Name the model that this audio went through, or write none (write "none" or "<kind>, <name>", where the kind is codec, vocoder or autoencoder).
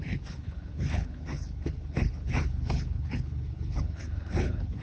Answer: codec, HILCodec